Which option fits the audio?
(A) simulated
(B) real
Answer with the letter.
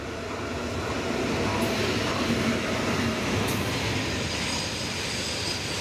B